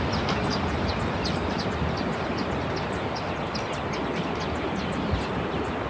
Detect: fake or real real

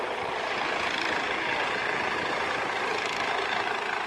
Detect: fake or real real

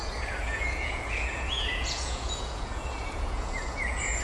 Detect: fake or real fake